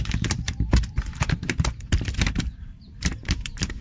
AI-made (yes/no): yes